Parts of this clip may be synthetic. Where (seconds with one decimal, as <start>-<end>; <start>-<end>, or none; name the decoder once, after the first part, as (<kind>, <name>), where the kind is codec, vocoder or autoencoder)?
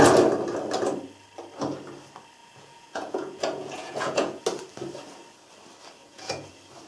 2.4-4.4 (vocoder, Vocos); 6.0-6.5